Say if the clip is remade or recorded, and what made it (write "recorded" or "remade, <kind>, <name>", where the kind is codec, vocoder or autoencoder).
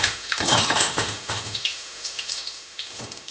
remade, autoencoder, DAC-VAE